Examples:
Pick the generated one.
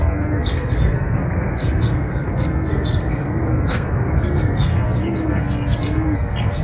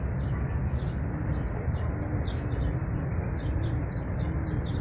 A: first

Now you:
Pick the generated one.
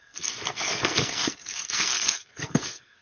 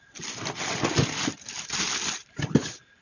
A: first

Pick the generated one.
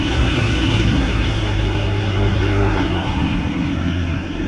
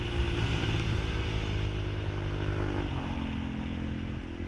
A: first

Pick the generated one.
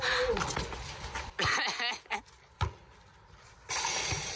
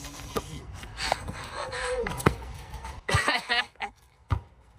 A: second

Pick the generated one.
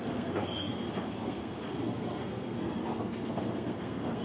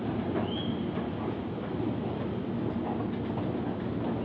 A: first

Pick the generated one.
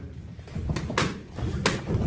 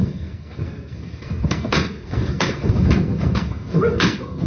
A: second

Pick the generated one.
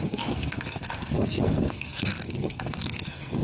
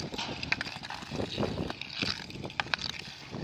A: first